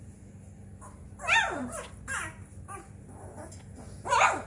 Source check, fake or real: real